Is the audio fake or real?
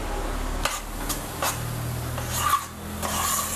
real